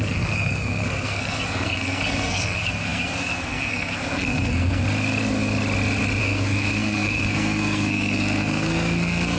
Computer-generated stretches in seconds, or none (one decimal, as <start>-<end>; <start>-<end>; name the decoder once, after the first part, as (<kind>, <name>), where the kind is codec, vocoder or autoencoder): 0.0-4.8 (codec, SNAC); 6.2-9.4